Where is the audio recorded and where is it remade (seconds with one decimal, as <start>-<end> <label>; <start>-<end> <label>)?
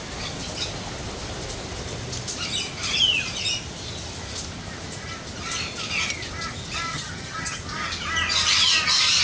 0.0-6.9 recorded; 6.9-7.6 remade; 7.6-9.2 recorded